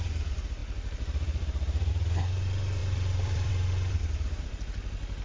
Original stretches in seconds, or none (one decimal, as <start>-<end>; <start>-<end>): 0.0-0.6; 1.9-2.8; 3.5-5.2